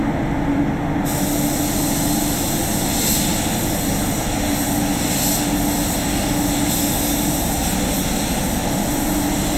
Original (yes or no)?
yes